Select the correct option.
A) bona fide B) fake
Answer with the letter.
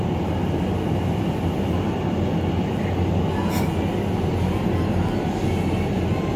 A